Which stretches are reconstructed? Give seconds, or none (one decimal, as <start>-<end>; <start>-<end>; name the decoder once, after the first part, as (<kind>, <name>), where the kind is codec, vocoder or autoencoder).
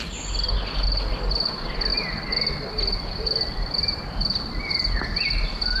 none